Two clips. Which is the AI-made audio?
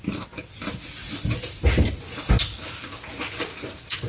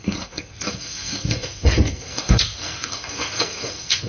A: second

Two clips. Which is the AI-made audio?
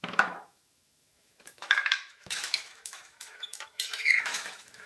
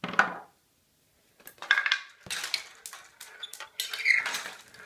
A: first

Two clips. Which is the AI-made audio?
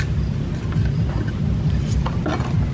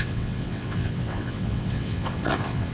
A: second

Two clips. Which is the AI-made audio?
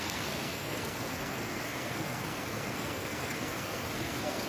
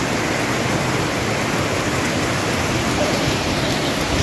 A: first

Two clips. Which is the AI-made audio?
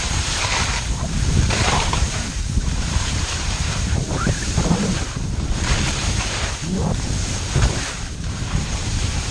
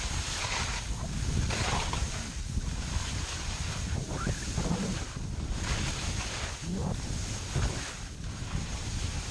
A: first